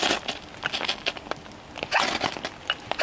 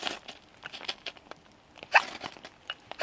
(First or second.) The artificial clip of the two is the second